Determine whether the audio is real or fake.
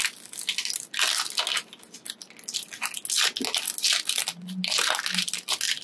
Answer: real